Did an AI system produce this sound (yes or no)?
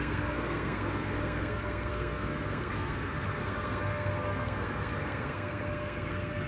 yes